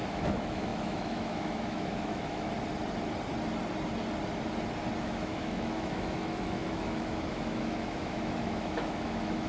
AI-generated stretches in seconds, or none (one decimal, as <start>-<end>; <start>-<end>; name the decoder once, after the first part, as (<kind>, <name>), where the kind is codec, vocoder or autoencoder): 0.0-2.5 (autoencoder, DAC-VAE); 5.0-9.5